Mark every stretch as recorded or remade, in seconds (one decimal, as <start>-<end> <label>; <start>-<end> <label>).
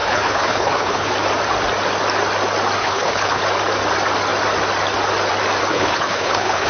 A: 0.0-1.1 remade; 1.1-2.8 recorded; 2.8-3.4 remade; 3.4-5.7 recorded; 5.7-6.7 remade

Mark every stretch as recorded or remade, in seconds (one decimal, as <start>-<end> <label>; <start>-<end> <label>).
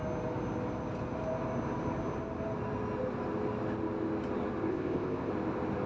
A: 0.0-4.7 recorded; 4.7-5.3 remade; 5.3-5.9 recorded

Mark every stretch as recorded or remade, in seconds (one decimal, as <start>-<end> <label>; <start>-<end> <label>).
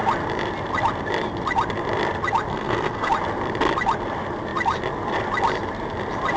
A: 0.0-2.5 recorded; 2.5-3.1 remade; 3.1-6.4 recorded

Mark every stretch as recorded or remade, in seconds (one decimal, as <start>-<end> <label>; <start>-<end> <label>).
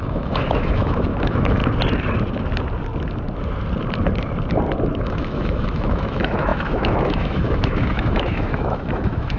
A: 0.0-1.6 remade; 1.6-5.0 recorded; 5.0-9.4 remade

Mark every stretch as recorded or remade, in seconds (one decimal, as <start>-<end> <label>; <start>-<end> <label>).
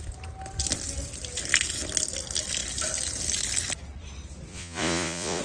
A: 0.0-4.5 recorded; 4.5-5.4 remade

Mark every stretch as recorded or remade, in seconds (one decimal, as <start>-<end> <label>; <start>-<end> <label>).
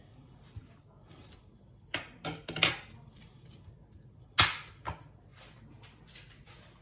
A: 0.0-6.8 recorded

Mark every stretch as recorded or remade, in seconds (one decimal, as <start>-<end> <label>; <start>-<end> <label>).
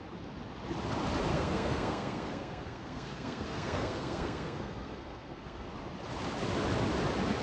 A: 0.0-1.3 recorded; 1.3-5.7 remade; 5.7-7.4 recorded